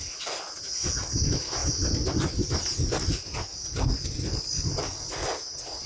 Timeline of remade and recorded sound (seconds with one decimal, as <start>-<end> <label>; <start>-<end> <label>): 0.0-5.9 recorded